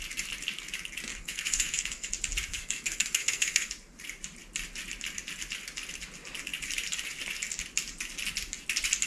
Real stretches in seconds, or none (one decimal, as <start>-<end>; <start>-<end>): 0.0-1.1; 2.1-2.5; 3.7-9.1